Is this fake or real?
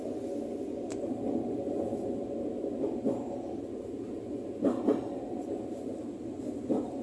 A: real